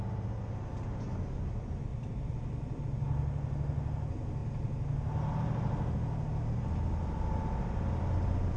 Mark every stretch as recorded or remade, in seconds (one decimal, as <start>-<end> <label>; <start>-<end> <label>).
0.0-1.9 recorded; 1.9-2.8 remade; 2.8-8.6 recorded